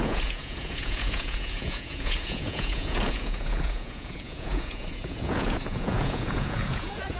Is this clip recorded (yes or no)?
no